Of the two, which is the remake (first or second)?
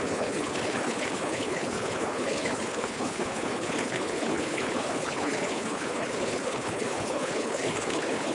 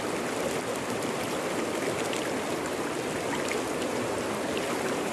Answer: first